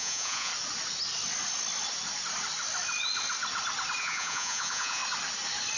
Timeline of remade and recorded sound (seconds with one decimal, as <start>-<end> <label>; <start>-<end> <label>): 0.0-0.5 remade; 0.5-4.0 recorded; 4.0-5.0 remade; 5.0-5.8 recorded